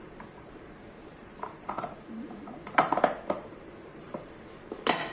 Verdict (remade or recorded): remade